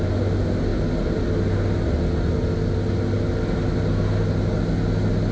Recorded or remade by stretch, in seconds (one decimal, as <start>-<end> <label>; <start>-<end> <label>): 0.0-5.3 recorded